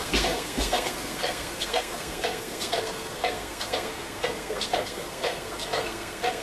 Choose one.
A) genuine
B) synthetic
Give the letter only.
B